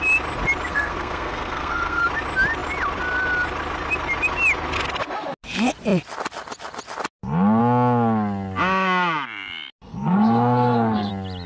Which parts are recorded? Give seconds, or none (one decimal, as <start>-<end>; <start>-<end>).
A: 0.0-0.7; 2.0-9.9; 11.1-11.5